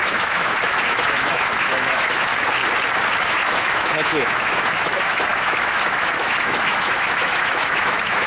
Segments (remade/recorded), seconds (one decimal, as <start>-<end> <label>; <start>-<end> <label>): 0.0-2.3 remade; 2.3-3.2 recorded; 3.2-8.3 remade